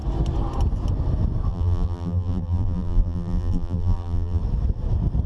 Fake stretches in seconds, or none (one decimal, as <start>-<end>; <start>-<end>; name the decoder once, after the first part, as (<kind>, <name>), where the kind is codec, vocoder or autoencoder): 1.5-4.4 (vocoder, BigVGAN v2)